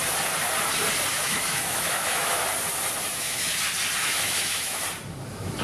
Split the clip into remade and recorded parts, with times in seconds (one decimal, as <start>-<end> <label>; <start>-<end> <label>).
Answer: 0.0-1.1 recorded; 1.1-2.4 remade; 2.4-3.1 recorded; 3.1-3.6 remade; 3.6-4.0 recorded; 4.0-4.8 remade; 4.8-5.6 recorded